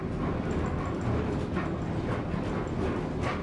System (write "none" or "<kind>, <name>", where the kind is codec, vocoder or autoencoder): none